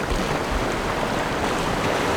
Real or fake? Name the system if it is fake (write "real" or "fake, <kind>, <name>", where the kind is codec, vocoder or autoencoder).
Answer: real